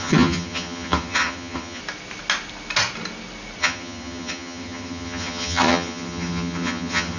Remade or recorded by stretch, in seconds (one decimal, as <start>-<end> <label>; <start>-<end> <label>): 0.0-1.8 remade; 1.8-3.6 recorded; 3.6-7.2 remade